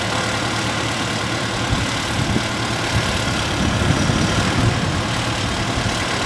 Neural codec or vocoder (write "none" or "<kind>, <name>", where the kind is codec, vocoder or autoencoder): vocoder, BigVGAN v2